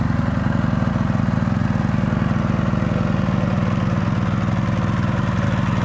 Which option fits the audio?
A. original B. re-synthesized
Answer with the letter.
A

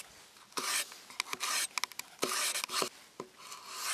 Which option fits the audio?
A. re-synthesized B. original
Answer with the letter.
B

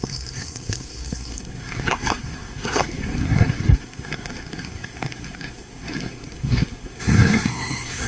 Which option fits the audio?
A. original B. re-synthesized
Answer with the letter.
B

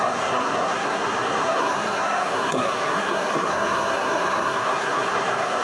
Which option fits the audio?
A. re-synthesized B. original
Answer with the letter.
A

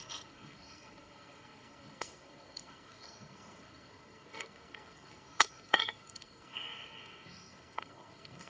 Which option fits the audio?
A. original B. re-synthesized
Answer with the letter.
B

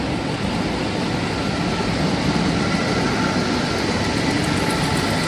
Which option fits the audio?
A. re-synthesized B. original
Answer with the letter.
B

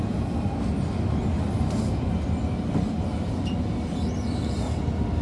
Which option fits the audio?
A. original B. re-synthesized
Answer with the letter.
A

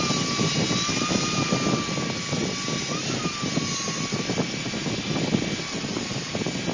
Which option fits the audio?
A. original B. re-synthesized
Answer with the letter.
A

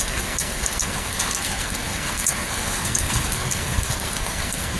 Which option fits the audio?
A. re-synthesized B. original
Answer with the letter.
A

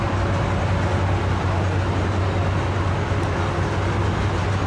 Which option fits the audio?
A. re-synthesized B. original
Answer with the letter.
B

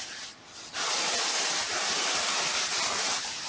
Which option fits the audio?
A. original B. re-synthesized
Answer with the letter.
A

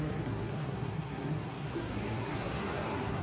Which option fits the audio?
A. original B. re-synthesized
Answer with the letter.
B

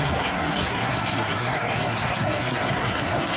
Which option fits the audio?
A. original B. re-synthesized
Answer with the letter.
B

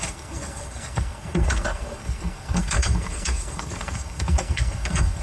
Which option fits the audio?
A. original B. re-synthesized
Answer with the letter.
B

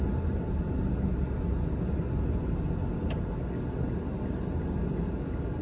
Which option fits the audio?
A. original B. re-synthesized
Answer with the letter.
A